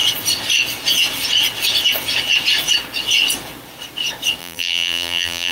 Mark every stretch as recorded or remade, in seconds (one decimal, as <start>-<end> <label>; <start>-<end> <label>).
0.0-4.4 recorded; 4.4-5.5 remade